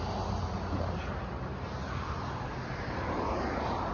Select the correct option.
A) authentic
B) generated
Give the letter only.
A